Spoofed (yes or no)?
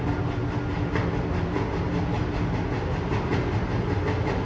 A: no